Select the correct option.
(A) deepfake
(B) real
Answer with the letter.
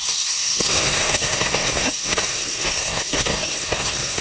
A